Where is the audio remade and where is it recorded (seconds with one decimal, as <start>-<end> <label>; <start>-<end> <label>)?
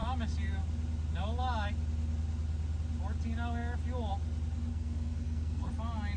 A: 0.0-4.7 recorded; 4.7-5.7 remade; 5.7-6.2 recorded